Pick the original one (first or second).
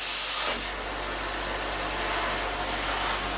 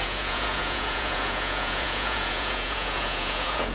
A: first